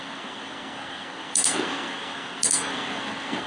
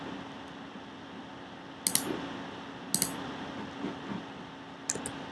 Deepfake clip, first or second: first